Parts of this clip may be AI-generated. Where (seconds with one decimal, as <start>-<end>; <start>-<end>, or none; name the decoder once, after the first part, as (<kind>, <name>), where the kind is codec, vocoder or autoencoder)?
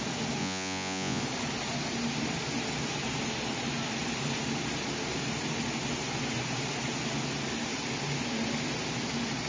0.4-1.2 (vocoder, Vocos)